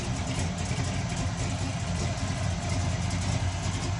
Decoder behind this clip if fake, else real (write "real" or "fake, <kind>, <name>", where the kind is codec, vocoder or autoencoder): real